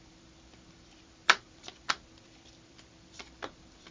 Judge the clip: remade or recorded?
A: remade